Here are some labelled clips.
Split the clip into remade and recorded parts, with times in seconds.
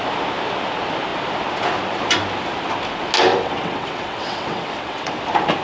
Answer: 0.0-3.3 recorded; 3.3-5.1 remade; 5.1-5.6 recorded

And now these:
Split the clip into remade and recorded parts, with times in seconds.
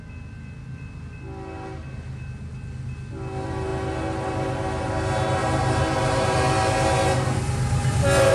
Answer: 0.0-5.4 recorded; 5.4-6.5 remade; 6.5-8.3 recorded